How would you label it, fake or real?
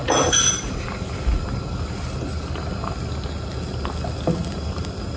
real